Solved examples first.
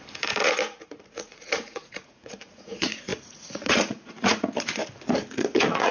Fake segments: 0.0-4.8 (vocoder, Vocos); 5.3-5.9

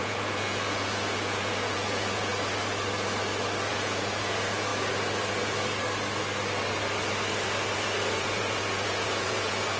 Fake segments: 0.0-2.3 (vocoder, Vocos); 3.7-4.7; 8.2-9.8

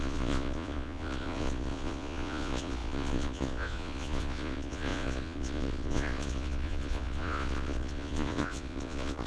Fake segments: 0.0-9.3 (vocoder, Vocos)